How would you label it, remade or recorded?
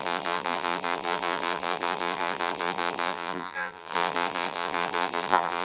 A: remade